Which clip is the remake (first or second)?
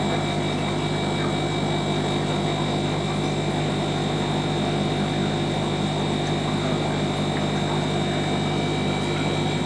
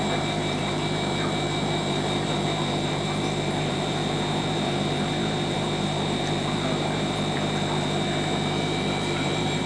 second